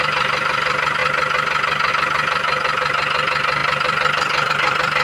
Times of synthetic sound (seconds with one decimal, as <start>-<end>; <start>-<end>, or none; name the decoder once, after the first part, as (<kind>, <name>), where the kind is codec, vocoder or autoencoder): 0.0-1.0 (vocoder, BigVGAN v2); 1.9-5.0